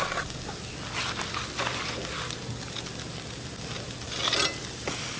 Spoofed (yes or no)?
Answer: no